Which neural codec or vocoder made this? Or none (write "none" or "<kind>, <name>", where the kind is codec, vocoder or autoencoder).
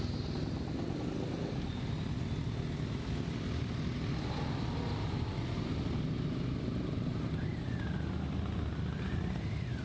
none